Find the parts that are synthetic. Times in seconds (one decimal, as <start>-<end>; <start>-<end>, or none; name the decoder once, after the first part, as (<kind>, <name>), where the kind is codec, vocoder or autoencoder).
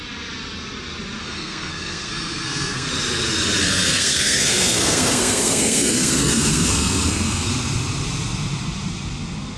1.2-2.9 (codec, SNAC); 3.6-7.5